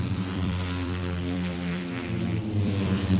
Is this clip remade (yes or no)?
yes